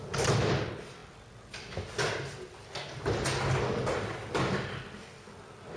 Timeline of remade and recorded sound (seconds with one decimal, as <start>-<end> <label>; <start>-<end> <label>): 0.0-5.8 recorded